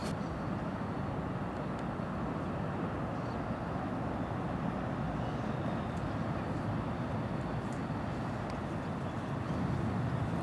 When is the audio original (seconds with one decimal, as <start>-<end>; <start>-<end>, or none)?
0.0-10.4